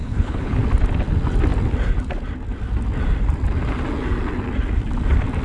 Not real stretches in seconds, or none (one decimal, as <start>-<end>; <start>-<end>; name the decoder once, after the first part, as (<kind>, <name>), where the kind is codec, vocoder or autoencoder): 0.0-0.6 (codec, HILCodec)